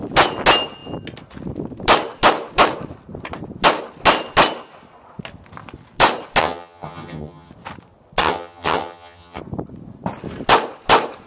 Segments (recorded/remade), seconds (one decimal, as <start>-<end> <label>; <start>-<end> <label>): 0.0-6.4 recorded; 6.4-7.5 remade; 7.5-8.2 recorded; 8.2-9.4 remade; 9.4-11.3 recorded